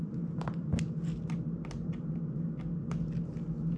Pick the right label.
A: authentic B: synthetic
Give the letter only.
A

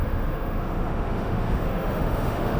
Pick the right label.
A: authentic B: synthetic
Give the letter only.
B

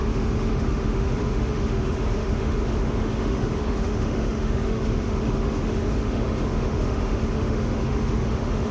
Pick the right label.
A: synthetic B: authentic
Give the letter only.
A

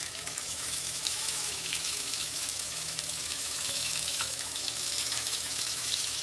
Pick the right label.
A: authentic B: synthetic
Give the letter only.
B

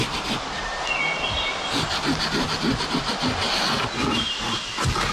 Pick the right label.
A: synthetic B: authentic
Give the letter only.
B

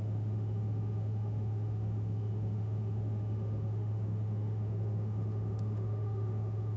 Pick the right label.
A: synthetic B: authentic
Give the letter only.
A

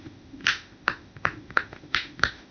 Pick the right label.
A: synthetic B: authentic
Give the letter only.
A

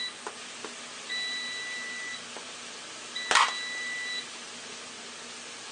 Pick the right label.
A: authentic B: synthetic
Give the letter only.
A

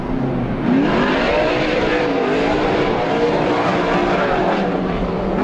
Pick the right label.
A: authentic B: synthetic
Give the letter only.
A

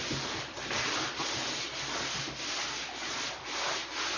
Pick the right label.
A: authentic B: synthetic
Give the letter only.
A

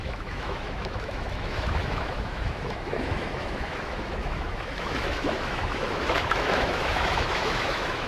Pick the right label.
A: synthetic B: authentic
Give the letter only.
A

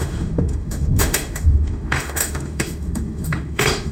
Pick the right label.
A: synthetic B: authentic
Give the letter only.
A